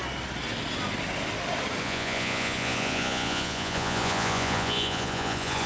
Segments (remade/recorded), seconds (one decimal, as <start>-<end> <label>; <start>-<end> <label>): 0.0-1.8 recorded; 1.8-5.7 remade